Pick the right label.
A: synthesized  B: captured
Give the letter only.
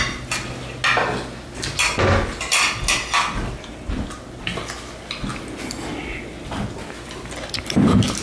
B